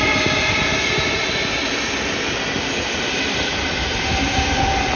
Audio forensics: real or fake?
real